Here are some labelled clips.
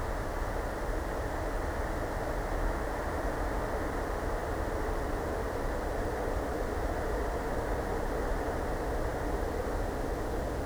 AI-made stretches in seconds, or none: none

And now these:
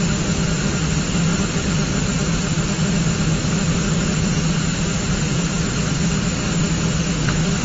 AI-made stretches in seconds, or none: 1.3-5.9 (vocoder, BigVGAN v2)